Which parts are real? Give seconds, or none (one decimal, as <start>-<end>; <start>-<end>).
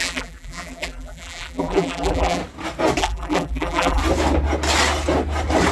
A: 2.4-3.0; 4.0-5.7